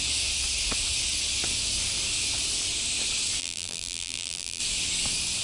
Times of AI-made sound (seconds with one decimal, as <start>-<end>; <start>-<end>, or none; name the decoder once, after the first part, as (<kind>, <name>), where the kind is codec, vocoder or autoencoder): 3.4-4.6 (vocoder, BigVGAN v2)